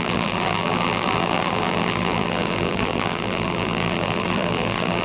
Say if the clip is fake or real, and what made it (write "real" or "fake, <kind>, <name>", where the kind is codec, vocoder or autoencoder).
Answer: fake, vocoder, BigVGAN v2